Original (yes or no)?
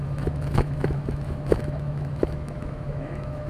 no